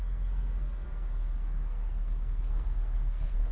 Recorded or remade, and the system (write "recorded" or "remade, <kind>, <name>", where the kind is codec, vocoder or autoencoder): remade, codec, SNAC